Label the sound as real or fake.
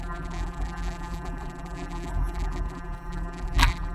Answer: fake